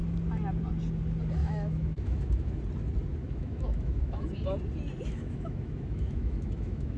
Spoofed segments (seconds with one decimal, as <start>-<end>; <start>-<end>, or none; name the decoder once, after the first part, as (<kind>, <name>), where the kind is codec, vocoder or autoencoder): 1.4-2.6 (autoencoder, DAC-VAE); 3.2-4.3; 5.1-7.0